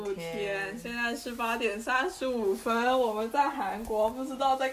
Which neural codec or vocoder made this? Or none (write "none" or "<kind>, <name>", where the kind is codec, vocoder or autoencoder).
none